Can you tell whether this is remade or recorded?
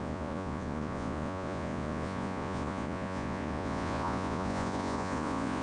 remade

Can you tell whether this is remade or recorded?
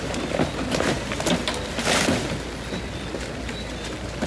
recorded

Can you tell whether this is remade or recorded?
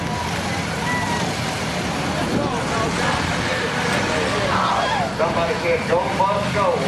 recorded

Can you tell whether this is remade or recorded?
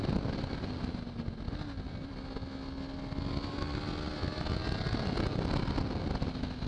recorded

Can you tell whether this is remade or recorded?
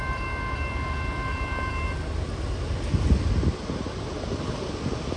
recorded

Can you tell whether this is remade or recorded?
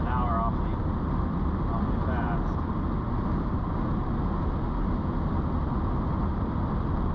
recorded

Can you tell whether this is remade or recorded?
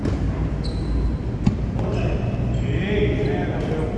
recorded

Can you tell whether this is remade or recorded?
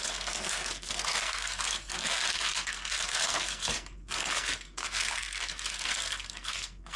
remade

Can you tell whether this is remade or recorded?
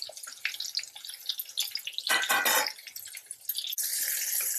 recorded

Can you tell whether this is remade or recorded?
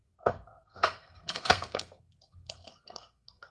remade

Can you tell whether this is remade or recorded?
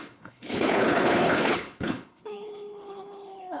remade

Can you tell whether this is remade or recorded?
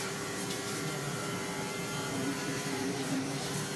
remade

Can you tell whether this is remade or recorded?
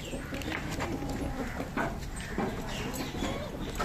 recorded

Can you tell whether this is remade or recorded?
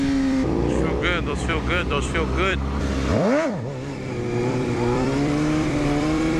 remade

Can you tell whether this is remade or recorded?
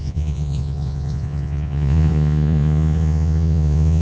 remade